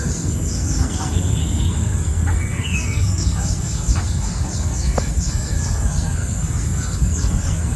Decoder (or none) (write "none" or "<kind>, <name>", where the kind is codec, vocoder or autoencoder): codec, SNAC